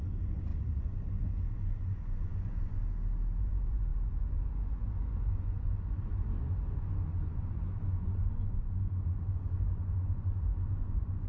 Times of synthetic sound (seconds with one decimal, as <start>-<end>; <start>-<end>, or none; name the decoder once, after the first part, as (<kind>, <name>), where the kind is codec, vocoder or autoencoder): 0.0-2.8 (vocoder, Vocos); 3.4-11.3